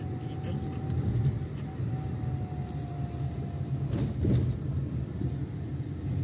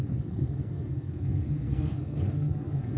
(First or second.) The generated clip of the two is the second